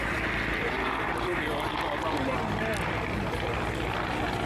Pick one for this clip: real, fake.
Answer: real